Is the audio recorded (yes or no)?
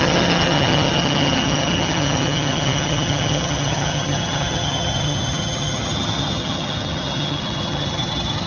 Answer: no